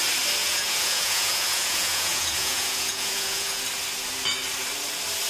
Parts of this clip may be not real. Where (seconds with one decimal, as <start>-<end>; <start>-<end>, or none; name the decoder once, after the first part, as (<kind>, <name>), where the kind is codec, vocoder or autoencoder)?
0.4-3.6 (vocoder, Vocos)